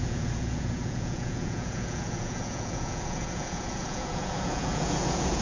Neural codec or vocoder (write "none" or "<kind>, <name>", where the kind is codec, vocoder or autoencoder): vocoder, Vocos